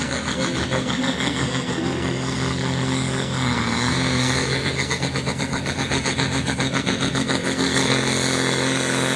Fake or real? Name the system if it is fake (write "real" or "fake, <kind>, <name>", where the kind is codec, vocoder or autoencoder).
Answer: fake, codec, SNAC